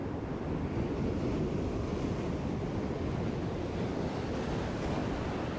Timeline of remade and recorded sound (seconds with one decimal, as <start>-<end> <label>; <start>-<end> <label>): 0.0-5.6 recorded